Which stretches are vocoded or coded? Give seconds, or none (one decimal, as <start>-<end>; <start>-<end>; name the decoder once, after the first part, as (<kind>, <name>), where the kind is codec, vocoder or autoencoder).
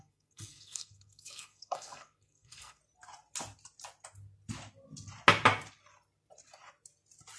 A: 0.0-2.8 (codec, SNAC)